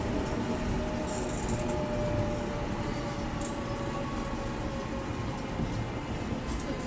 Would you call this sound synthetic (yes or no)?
no